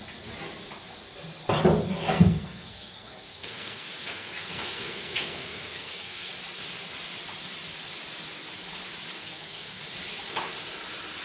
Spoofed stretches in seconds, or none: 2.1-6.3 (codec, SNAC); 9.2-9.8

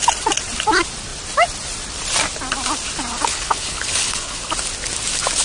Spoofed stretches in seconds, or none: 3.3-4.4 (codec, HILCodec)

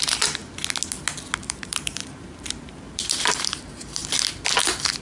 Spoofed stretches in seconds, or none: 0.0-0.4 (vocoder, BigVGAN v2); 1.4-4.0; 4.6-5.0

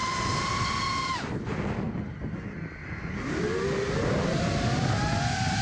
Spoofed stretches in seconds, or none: none